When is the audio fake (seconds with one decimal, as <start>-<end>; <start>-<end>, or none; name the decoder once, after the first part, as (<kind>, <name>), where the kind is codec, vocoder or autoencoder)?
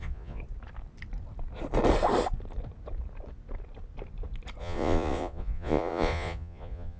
0.0-0.4 (vocoder, Vocos); 4.6-7.0